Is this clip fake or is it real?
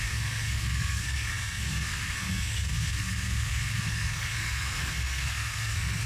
fake